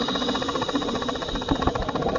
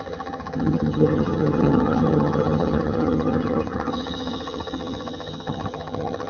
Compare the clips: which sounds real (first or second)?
first